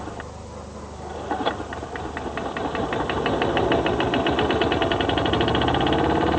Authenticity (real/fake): real